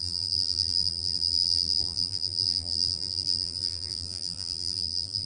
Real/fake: fake